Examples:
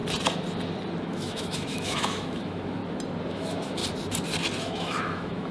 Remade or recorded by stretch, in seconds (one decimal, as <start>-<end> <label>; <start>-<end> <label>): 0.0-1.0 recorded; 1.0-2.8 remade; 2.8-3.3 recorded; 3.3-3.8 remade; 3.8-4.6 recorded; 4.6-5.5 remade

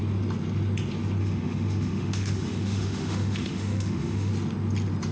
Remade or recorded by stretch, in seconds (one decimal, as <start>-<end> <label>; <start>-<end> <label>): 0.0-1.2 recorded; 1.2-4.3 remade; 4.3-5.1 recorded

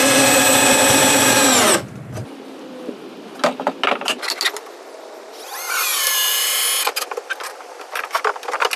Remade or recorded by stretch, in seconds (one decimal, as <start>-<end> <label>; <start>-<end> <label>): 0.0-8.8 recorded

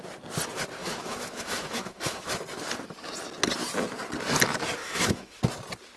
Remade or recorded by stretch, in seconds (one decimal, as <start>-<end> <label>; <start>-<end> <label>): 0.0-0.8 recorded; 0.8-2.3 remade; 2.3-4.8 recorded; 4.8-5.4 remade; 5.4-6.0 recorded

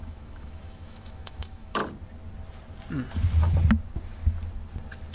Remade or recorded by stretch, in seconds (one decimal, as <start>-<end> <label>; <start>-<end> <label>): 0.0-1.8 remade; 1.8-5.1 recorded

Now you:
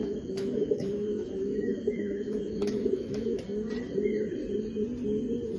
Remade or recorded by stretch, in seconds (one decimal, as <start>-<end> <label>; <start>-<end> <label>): 0.0-3.4 remade; 3.4-5.6 recorded

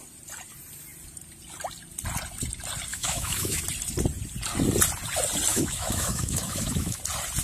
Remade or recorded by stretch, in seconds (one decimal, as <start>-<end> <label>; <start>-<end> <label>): 0.0-2.9 recorded; 2.9-3.6 remade; 3.6-5.5 recorded; 5.5-7.0 remade; 7.0-7.4 recorded

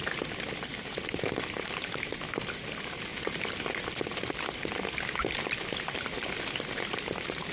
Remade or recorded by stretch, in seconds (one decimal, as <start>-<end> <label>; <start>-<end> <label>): 0.0-7.5 recorded